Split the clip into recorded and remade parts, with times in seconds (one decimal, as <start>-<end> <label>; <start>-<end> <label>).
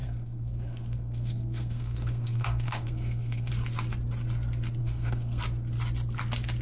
0.0-3.5 remade; 3.5-4.8 recorded; 4.8-5.4 remade; 5.4-6.6 recorded